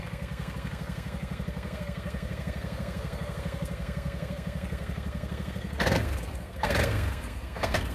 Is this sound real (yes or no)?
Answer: no